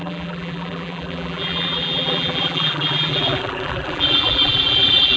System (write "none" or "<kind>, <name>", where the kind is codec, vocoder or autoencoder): vocoder, BigVGAN v2